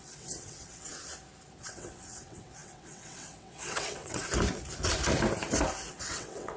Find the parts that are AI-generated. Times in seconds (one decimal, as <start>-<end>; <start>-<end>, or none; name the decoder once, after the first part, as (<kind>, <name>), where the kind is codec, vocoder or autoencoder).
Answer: 0.0-0.9 (vocoder, WaveNeXt); 1.6-4.2; 5.9-6.6